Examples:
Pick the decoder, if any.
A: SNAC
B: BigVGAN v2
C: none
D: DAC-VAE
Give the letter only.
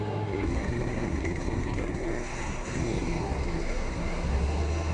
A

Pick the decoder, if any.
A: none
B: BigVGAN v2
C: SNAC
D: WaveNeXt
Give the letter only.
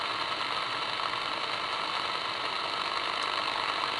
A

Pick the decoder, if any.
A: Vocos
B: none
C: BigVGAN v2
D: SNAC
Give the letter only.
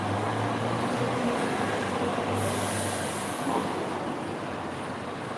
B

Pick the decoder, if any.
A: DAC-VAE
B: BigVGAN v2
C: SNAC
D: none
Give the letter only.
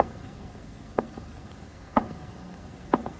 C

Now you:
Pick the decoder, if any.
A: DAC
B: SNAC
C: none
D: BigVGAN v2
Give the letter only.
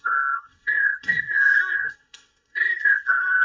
B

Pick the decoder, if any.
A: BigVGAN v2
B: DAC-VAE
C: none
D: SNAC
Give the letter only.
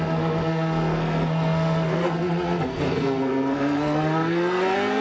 D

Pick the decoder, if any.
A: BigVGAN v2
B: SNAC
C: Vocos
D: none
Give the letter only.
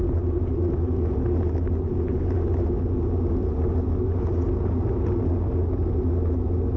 D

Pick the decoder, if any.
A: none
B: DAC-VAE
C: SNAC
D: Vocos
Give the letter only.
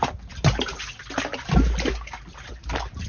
A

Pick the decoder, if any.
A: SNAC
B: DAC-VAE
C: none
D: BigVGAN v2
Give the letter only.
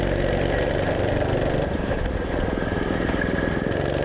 C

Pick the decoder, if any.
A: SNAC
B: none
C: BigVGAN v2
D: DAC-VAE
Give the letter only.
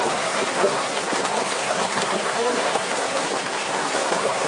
A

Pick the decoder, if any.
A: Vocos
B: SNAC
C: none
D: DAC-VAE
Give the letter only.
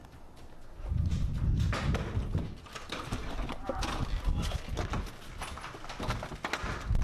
C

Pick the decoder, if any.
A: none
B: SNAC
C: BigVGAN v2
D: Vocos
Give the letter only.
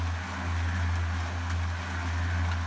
A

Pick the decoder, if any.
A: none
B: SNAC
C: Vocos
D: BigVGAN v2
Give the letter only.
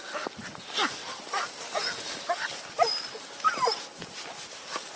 A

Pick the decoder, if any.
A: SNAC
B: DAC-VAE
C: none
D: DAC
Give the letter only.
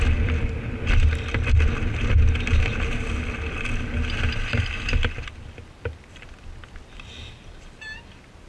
C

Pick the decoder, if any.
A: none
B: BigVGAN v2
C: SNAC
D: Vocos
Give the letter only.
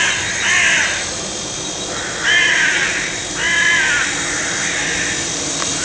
A